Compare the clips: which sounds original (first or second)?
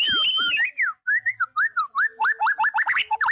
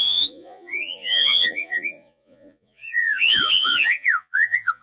first